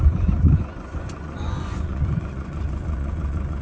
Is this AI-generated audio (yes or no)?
yes